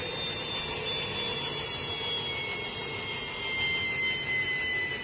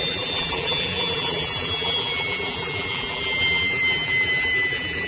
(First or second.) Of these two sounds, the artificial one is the second